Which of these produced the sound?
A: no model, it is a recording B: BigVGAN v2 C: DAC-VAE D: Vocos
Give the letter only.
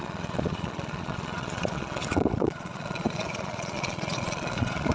D